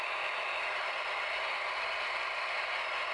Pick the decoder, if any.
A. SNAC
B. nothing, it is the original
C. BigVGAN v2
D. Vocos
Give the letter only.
C